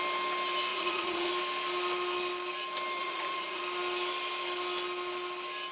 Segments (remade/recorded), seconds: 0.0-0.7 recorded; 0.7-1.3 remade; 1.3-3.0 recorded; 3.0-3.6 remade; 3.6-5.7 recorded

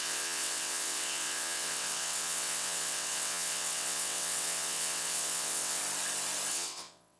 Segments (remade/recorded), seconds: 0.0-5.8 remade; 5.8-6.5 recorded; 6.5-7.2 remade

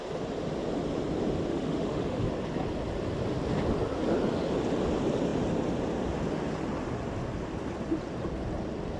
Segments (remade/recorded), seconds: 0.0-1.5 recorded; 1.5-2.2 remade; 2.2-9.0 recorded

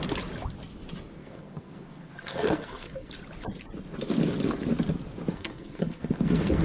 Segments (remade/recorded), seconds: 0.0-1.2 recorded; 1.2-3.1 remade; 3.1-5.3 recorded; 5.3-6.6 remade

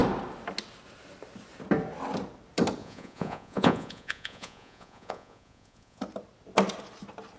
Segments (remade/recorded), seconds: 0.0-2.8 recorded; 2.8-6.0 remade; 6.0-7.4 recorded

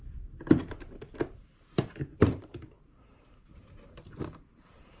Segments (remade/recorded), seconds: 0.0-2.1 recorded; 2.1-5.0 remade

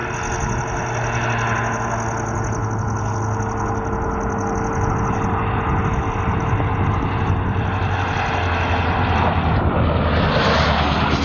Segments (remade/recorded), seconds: 0.0-11.2 recorded

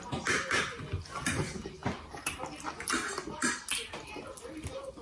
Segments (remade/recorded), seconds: 0.0-5.0 recorded